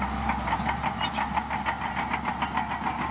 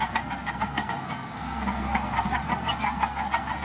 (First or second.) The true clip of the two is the first